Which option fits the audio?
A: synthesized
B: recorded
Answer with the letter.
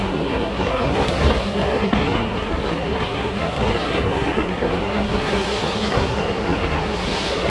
A